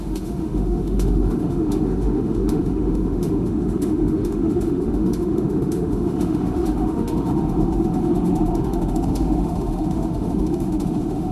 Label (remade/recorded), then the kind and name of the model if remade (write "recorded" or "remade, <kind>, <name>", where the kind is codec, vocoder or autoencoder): remade, autoencoder, DAC-VAE